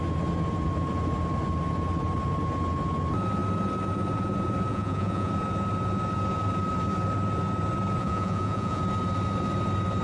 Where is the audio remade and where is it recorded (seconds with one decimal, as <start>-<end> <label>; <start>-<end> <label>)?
0.0-4.7 recorded; 4.7-5.3 remade; 5.3-8.0 recorded; 8.0-8.8 remade; 8.8-10.0 recorded